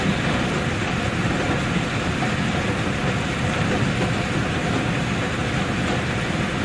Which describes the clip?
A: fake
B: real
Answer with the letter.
B